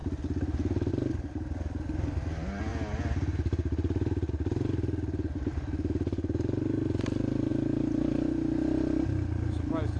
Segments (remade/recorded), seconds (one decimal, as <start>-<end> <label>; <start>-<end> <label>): 0.0-10.0 recorded